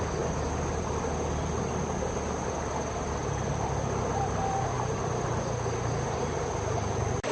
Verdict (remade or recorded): recorded